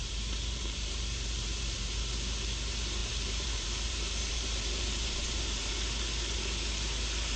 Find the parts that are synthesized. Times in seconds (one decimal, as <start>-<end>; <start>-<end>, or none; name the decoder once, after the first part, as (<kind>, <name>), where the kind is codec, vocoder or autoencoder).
0.0-2.0 (vocoder, BigVGAN v2); 3.0-5.7